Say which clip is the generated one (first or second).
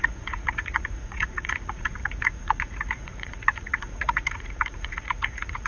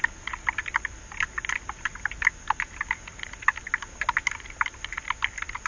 first